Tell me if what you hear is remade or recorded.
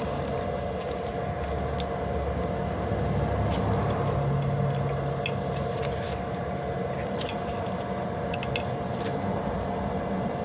recorded